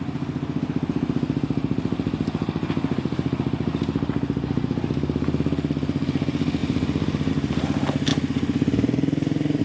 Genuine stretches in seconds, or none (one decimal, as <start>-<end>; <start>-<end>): 0.0-9.6